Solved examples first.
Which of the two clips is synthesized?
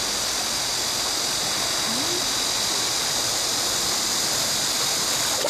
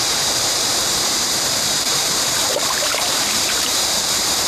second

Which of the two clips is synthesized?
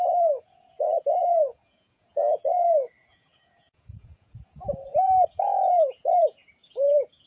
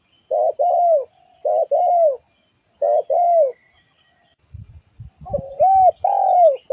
first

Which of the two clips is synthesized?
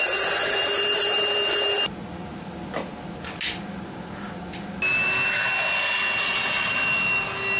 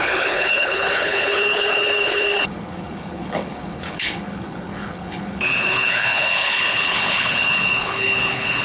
second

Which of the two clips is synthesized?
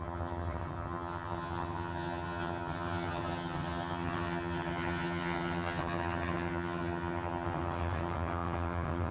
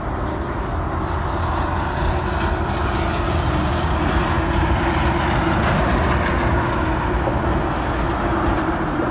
first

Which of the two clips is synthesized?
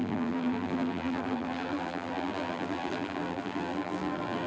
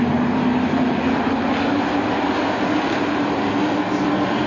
first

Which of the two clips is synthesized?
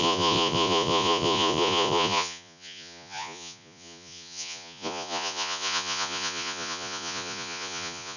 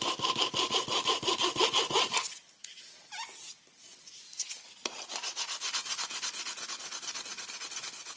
first